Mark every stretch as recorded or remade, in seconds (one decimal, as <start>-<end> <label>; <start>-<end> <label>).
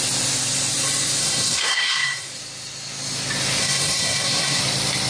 0.0-1.2 recorded; 1.2-2.3 remade; 2.3-3.6 recorded; 3.6-4.6 remade; 4.6-5.1 recorded